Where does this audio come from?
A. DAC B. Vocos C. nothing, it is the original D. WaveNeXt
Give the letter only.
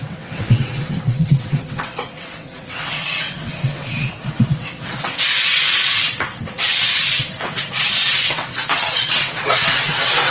D